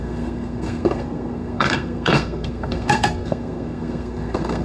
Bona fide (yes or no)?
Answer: no